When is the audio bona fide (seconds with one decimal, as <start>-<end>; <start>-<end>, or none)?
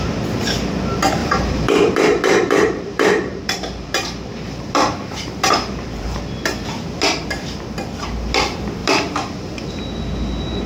0.0-1.2; 6.2-8.8; 9.8-10.7